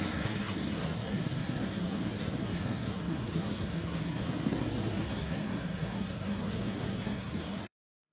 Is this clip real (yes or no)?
no